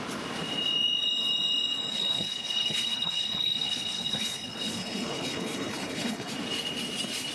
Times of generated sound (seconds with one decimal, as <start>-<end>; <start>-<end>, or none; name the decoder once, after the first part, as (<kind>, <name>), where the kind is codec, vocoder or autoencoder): 1.9-6.3 (codec, HILCodec)